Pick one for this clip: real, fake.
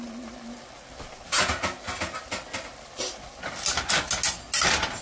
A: real